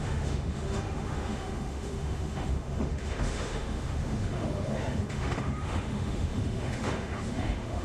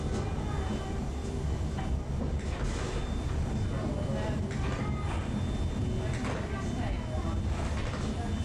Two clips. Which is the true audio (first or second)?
second